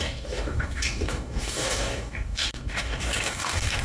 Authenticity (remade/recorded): remade